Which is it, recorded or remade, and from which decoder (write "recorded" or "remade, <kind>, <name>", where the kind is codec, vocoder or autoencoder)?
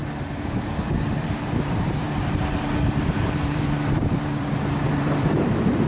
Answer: remade, vocoder, BigVGAN v2